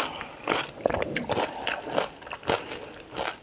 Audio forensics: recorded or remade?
recorded